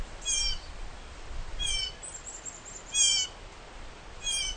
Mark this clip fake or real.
real